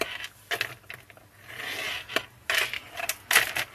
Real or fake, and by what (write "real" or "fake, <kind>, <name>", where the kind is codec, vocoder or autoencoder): real